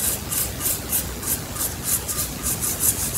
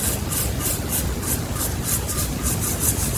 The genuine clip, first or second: first